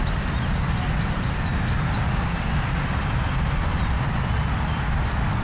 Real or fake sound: real